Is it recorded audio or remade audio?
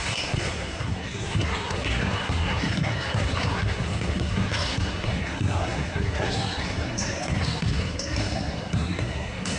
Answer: remade